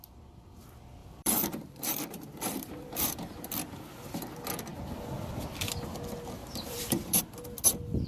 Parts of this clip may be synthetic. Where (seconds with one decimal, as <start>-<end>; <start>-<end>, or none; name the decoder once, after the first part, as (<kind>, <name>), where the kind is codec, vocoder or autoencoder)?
1.0-3.4 (vocoder, BigVGAN v2); 6.4-7.2